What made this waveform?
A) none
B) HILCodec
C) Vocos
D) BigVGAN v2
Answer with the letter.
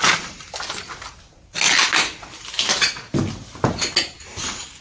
A